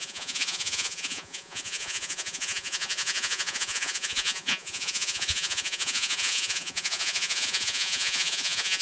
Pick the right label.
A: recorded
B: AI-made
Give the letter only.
B